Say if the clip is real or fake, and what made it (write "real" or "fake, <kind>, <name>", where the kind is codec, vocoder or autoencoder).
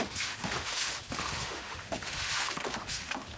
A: fake, autoencoder, DAC-VAE